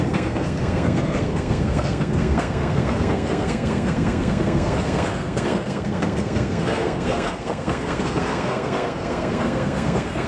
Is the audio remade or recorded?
remade